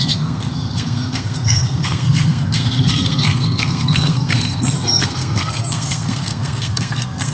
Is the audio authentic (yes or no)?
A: no